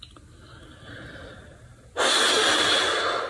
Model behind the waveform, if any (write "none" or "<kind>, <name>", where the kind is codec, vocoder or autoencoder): none